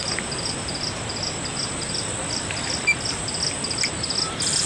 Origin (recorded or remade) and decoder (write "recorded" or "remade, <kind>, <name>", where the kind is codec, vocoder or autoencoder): recorded